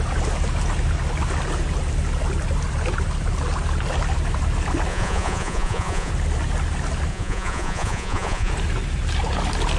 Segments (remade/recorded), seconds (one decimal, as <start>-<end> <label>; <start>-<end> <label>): 0.0-4.9 recorded; 4.9-6.1 remade; 6.1-7.1 recorded; 7.1-8.5 remade; 8.5-9.8 recorded